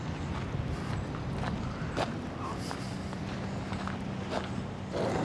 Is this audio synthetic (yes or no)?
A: no